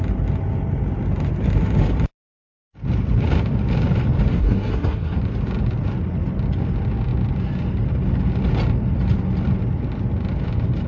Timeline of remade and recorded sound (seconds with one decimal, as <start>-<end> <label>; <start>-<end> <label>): 0.0-4.3 recorded; 4.3-5.2 remade; 5.2-10.9 recorded